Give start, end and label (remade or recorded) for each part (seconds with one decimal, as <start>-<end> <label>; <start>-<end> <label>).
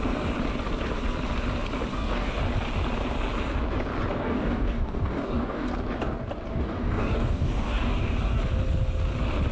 0.0-1.9 recorded; 1.9-2.4 remade; 2.4-4.2 recorded; 4.2-5.7 remade; 5.7-6.5 recorded; 6.5-8.4 remade; 8.4-9.5 recorded